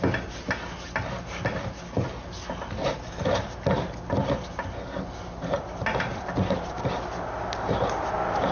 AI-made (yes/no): no